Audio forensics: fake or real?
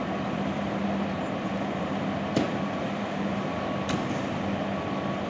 real